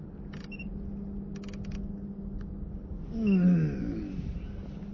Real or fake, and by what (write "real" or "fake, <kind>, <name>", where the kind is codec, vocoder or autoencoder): real